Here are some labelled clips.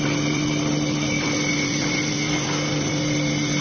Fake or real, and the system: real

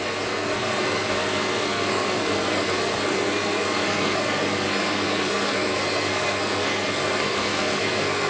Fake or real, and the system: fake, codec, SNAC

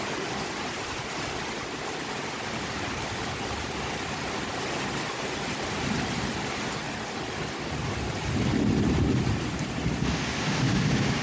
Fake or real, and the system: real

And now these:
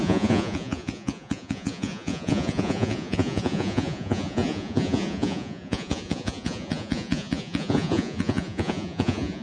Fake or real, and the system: fake, vocoder, Vocos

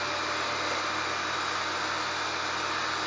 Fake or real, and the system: real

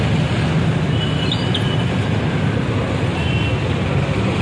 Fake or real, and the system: real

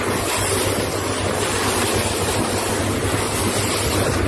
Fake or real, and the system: real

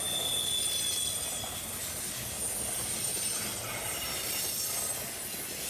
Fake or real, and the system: real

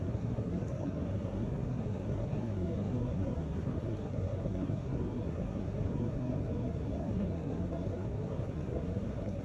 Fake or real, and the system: fake, codec, SNAC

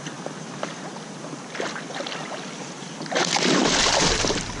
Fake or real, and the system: real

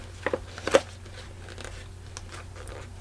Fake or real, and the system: real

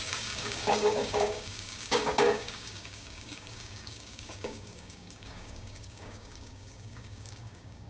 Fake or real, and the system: fake, codec, DAC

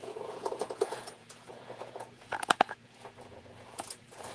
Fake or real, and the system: fake, vocoder, Vocos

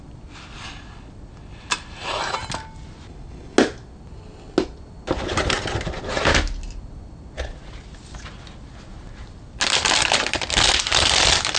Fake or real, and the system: real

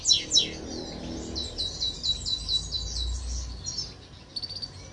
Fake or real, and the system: real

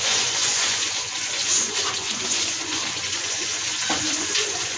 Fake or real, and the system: fake, vocoder, Vocos